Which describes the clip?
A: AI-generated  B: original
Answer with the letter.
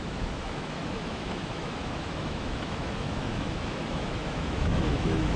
A